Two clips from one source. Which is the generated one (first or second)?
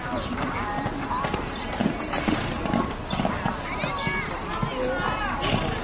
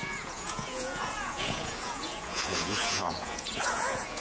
second